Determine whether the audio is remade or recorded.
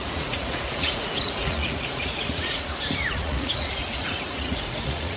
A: remade